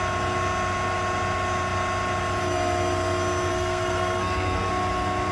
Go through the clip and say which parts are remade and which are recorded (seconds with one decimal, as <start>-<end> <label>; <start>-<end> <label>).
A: 0.0-3.5 recorded; 3.5-4.7 remade; 4.7-5.3 recorded